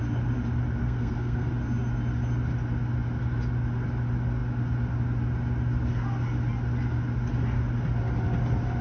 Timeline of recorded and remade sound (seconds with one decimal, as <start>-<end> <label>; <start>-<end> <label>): 0.0-0.8 recorded; 0.8-1.5 remade; 1.5-8.8 recorded